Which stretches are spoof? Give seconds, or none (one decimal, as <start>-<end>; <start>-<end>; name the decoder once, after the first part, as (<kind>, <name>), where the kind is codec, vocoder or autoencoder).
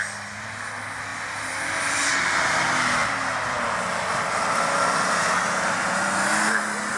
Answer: none